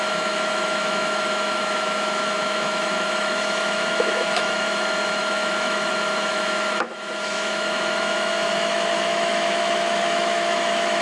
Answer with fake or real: fake